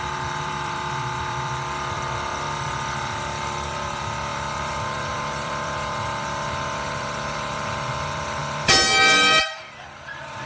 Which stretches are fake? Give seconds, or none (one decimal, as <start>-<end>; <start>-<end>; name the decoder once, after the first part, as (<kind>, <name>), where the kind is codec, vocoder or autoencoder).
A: 0.0-8.4 (vocoder, BigVGAN v2); 9.4-10.5